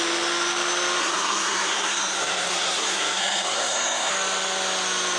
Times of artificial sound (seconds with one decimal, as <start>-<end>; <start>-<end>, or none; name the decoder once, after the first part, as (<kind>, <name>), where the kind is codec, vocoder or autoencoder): 1.0-4.1 (codec, SNAC)